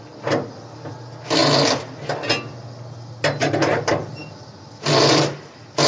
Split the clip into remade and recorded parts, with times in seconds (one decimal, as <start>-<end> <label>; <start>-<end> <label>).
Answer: 0.0-5.9 recorded

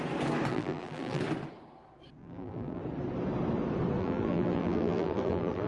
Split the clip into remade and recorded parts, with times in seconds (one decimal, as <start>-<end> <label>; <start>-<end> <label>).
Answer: 0.0-0.5 recorded; 0.5-1.2 remade; 1.2-2.2 recorded; 2.2-2.8 remade; 2.8-4.0 recorded; 4.0-5.7 remade

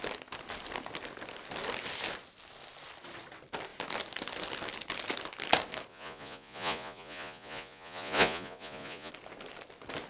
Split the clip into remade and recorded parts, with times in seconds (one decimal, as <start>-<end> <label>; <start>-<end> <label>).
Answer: 0.0-5.9 recorded; 5.9-9.1 remade; 9.1-10.1 recorded